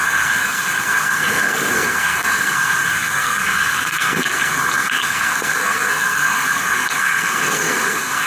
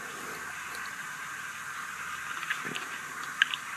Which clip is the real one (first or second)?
second